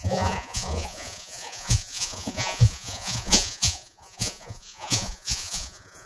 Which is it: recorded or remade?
remade